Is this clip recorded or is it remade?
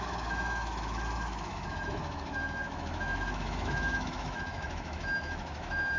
remade